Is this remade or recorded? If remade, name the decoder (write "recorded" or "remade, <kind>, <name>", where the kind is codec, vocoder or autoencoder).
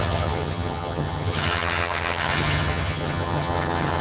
remade, vocoder, HiFi-GAN